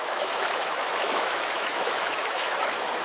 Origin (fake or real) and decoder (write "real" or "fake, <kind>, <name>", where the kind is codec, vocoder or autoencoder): fake, autoencoder, DAC-VAE